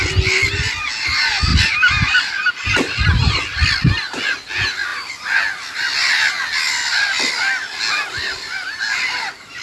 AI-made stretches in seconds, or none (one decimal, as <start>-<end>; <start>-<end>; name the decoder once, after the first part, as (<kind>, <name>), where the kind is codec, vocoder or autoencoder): 1.5-2.5 (vocoder, BigVGAN v2)